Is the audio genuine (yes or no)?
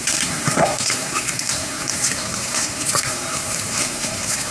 no